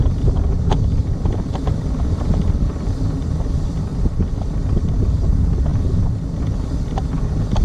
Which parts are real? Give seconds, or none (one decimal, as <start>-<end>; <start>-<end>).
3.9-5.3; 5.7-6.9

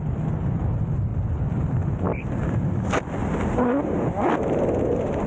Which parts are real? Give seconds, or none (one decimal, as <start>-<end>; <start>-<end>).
0.0-1.1; 1.7-3.2; 4.1-5.3

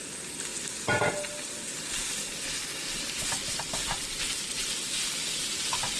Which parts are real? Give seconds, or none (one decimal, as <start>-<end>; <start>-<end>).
0.0-4.6; 5.1-6.0

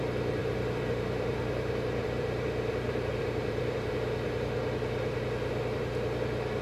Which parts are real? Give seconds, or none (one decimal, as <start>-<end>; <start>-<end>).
0.0-0.4; 3.9-6.6

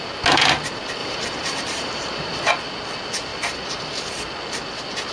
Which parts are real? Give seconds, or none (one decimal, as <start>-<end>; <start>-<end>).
0.0-1.0; 2.5-3.3; 4.2-5.1